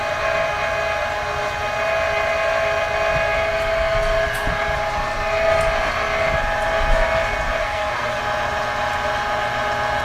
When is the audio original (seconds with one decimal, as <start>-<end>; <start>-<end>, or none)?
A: 0.0-7.6; 8.2-10.0